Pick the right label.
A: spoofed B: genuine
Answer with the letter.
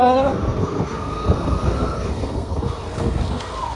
A